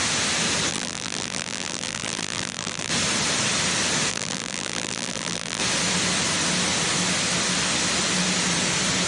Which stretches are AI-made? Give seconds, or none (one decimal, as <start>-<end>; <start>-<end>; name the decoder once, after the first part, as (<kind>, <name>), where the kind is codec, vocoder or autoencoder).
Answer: 0.7-2.9 (vocoder, BigVGAN v2); 4.1-5.6